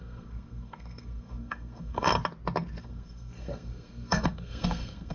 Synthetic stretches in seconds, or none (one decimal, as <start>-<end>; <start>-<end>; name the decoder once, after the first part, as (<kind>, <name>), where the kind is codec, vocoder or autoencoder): 0.0-2.1 (codec, SNAC); 2.8-5.1